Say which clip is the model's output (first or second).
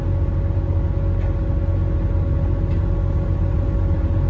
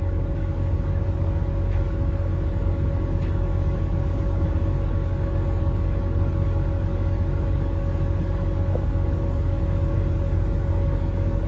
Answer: second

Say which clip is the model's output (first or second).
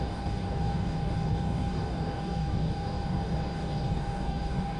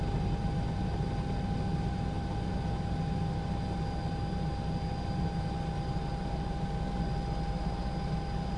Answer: first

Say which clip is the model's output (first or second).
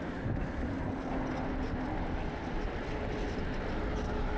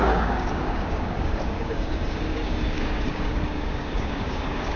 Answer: second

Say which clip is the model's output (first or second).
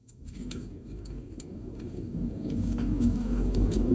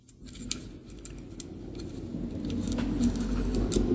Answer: first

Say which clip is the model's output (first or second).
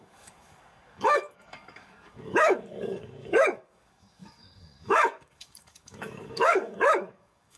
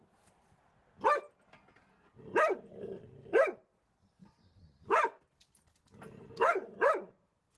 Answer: first